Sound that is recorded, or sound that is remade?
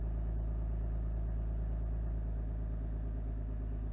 recorded